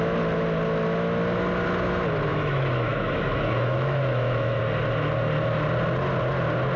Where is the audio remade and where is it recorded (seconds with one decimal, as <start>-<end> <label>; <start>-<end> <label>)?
0.0-2.3 recorded; 2.3-4.6 remade; 4.6-6.8 recorded